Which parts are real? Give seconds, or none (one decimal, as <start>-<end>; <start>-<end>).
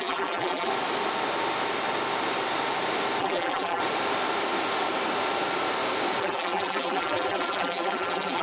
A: 0.7-3.2; 3.8-6.2